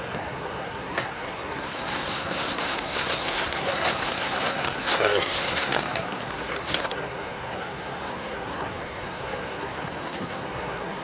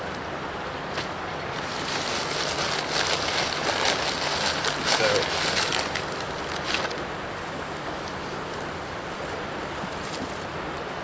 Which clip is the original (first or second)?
second